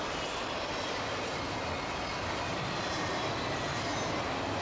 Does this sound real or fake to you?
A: real